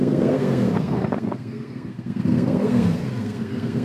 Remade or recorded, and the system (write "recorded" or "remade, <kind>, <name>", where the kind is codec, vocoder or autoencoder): remade, codec, SNAC